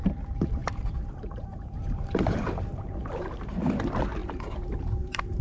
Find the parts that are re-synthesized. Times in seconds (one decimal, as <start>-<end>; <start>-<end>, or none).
0.6-3.8; 4.2-5.4